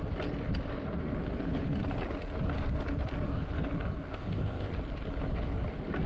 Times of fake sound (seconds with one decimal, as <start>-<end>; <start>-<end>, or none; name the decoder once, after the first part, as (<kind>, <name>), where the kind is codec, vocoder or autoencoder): 4.1-4.7 (codec, ZipCodec)